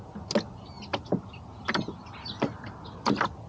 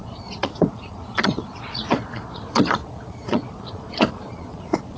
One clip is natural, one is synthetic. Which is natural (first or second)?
first